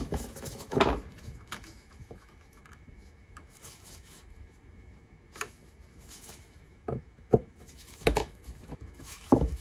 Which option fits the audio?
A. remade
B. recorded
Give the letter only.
A